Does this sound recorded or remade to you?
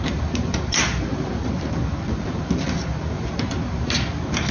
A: remade